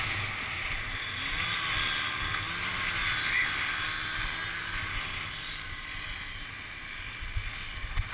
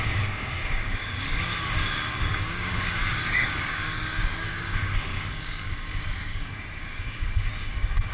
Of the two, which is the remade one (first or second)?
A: second